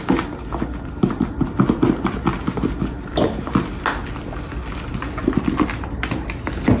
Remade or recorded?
recorded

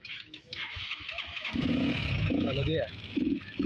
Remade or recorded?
remade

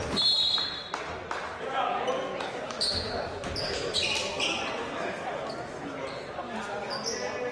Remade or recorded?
recorded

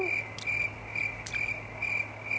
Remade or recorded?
recorded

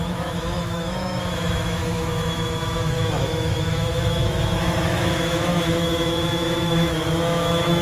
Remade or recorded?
remade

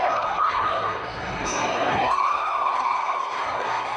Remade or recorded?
remade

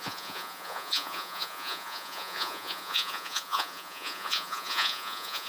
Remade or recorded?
remade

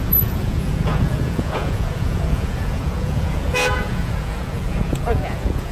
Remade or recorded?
remade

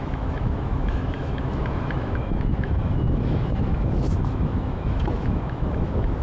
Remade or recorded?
remade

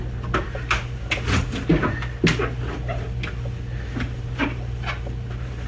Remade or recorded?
recorded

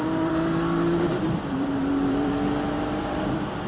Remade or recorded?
remade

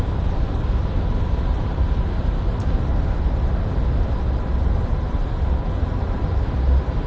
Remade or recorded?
recorded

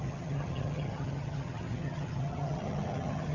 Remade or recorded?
remade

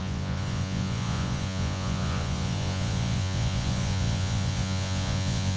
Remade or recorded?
remade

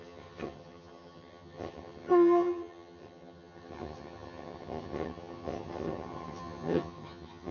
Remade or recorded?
remade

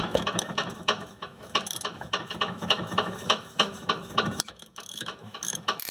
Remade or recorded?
remade